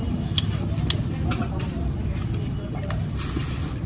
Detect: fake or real real